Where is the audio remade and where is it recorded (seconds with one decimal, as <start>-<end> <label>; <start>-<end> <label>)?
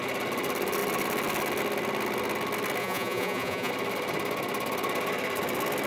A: 0.0-2.8 recorded; 2.8-3.7 remade; 3.7-5.9 recorded